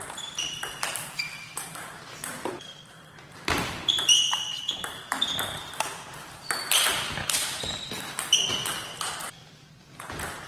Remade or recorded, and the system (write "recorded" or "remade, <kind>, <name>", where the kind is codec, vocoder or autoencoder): remade, vocoder, BigVGAN v2